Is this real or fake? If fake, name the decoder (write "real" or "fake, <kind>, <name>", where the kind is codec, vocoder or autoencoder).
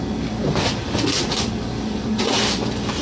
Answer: real